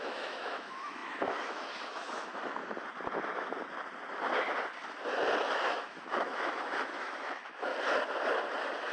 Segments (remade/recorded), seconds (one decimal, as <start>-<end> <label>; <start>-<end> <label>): 0.0-2.6 remade; 2.6-5.5 recorded; 5.5-7.7 remade; 7.7-8.9 recorded